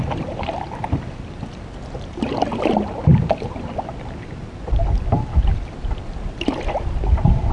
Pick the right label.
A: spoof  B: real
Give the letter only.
B